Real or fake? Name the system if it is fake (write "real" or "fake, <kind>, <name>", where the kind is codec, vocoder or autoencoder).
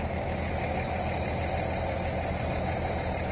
real